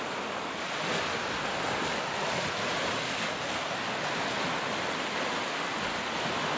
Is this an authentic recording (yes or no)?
yes